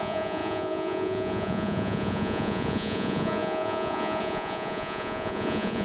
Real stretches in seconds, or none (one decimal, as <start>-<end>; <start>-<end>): none